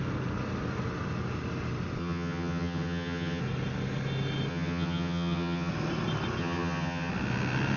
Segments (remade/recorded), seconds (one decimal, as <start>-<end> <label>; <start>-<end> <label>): 0.0-2.0 recorded; 2.0-3.4 remade; 3.4-4.5 recorded; 4.5-5.7 remade; 5.7-6.4 recorded; 6.4-7.1 remade; 7.1-7.8 recorded